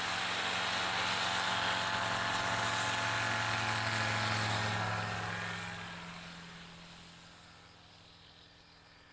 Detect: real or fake real